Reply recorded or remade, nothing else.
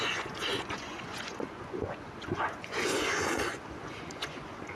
remade